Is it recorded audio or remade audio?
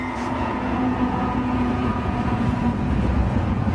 remade